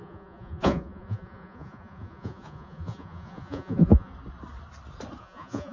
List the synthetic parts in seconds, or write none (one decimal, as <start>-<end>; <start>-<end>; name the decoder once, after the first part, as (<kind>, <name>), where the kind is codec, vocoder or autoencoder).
0.0-4.1 (vocoder, Vocos); 5.2-5.7